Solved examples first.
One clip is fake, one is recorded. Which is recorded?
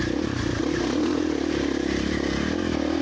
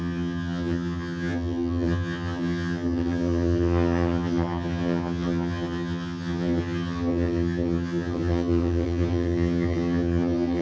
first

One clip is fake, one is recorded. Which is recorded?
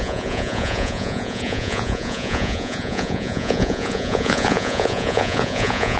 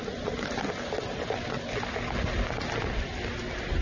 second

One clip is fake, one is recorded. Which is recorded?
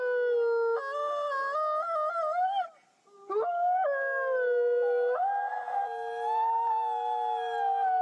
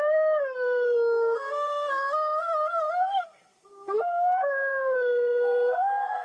first